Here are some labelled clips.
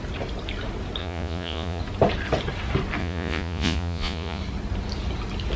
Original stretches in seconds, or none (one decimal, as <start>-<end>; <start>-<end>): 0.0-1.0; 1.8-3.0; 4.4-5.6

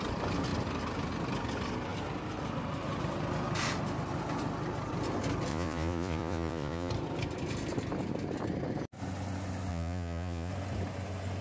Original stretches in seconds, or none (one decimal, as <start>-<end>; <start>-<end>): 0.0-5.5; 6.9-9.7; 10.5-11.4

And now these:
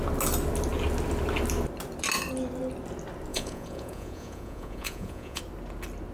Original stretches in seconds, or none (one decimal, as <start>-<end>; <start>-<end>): 0.0-3.3; 5.4-6.1